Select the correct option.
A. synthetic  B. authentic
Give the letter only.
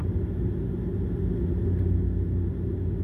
B